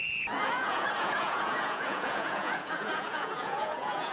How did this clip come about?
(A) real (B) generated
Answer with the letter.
B